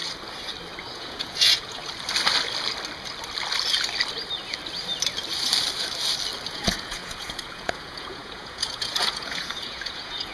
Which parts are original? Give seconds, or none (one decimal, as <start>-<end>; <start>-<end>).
0.0-0.9; 1.8-6.5

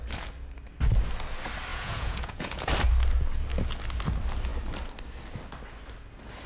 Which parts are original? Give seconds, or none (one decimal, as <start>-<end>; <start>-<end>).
0.0-1.7; 2.7-6.5

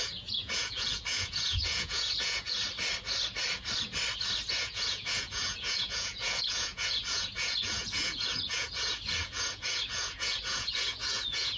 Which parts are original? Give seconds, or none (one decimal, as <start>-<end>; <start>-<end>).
2.6-4.5

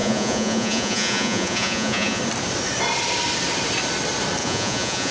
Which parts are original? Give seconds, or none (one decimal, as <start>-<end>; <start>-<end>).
2.2-4.4

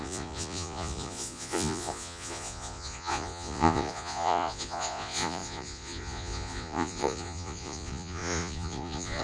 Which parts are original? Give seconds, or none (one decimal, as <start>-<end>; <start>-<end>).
none

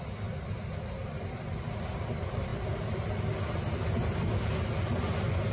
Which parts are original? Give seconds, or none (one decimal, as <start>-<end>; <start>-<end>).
0.0-5.5

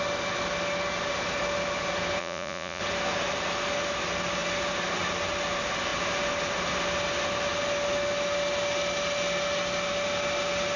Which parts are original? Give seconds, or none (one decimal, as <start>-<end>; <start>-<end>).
0.0-2.2; 2.8-10.8

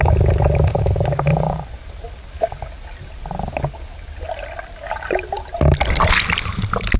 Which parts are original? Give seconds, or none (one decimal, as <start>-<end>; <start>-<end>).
0.0-1.3; 1.8-7.0